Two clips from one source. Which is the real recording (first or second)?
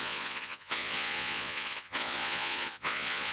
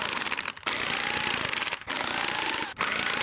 second